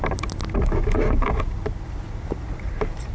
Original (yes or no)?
yes